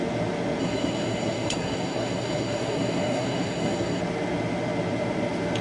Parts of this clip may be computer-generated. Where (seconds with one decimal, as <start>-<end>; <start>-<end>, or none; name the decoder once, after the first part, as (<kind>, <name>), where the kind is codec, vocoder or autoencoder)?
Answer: 0.6-4.0 (codec, SNAC)